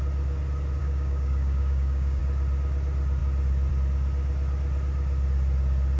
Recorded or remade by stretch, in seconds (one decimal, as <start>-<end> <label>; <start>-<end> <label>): 0.0-0.8 recorded; 0.8-2.2 remade; 2.2-6.0 recorded